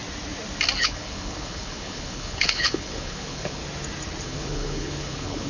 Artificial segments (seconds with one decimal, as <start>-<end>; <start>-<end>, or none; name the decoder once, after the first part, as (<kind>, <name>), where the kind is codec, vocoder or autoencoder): 0.8-3.6 (codec, HILCodec); 4.2-5.5